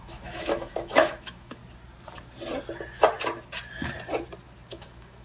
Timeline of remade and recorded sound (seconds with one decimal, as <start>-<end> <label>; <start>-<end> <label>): 0.0-1.6 remade; 1.6-4.7 recorded; 4.7-5.2 remade